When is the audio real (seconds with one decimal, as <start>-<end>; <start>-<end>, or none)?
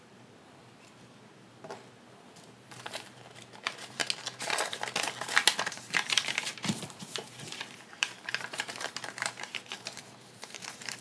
4.0-5.6